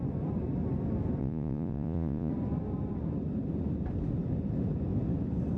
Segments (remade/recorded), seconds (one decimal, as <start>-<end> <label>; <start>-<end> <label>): 0.0-1.2 recorded; 1.2-2.3 remade; 2.3-5.6 recorded